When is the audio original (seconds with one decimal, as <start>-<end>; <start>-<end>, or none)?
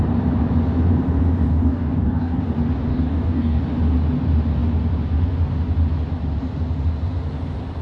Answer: 0.0-1.5; 2.4-2.9; 3.6-7.8